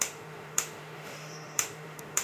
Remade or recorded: remade